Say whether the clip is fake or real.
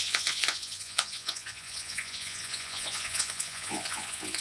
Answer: fake